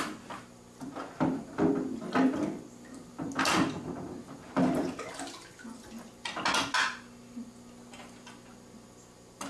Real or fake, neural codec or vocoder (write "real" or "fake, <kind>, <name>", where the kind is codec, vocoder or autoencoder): real